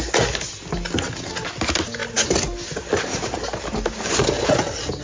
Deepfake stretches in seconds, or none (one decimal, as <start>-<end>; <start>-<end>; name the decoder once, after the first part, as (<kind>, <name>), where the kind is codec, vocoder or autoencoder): none